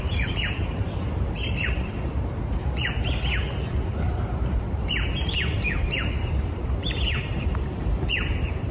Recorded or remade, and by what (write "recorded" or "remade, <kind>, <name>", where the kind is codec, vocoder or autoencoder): remade, vocoder, BigVGAN v2